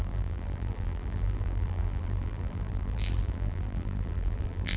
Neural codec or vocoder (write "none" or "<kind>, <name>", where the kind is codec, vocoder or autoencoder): vocoder, BigVGAN v2